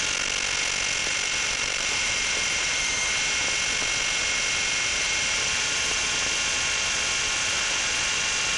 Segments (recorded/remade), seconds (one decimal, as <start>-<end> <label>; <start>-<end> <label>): 0.0-1.0 recorded; 1.0-3.1 remade; 3.1-4.9 recorded; 4.9-6.2 remade; 6.2-8.6 recorded